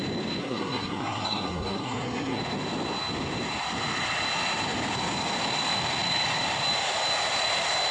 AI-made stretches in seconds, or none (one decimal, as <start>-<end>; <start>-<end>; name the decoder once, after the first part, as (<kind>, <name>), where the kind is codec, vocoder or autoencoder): 0.4-2.4 (codec, SNAC)